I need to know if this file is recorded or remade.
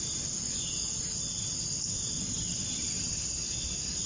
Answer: recorded